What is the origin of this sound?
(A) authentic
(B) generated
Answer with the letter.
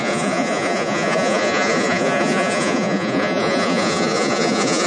B